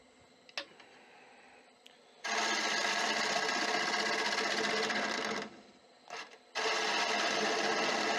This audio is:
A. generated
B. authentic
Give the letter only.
B